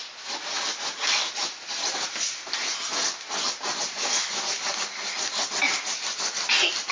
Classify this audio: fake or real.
real